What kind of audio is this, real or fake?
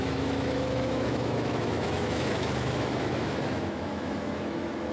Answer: fake